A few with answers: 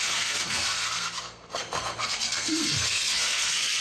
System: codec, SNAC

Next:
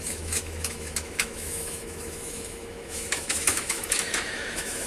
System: autoencoder, DAC-VAE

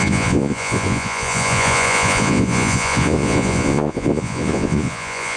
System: vocoder, Vocos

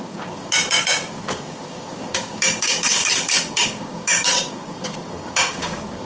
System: codec, DAC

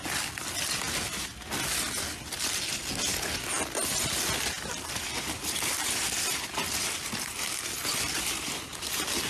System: none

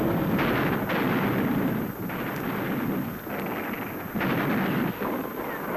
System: none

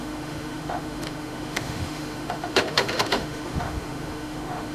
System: autoencoder, DAC-VAE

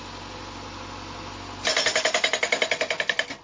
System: none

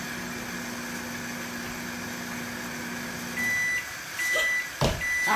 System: none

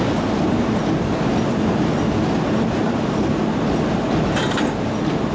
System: none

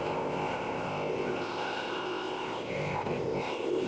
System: codec, ZipCodec